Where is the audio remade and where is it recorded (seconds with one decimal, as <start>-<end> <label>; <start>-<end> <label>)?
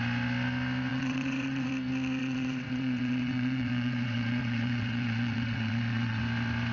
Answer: 0.0-0.9 recorded; 0.9-1.7 remade; 1.7-2.2 recorded; 2.2-6.2 remade; 6.2-6.7 recorded